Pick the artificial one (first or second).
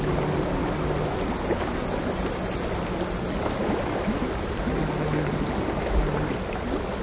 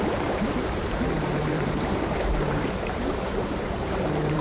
second